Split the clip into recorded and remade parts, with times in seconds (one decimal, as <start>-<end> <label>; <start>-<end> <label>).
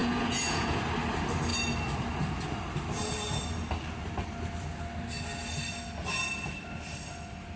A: 0.0-0.8 remade; 0.8-7.6 recorded